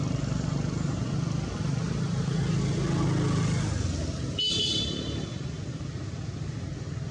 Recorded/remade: recorded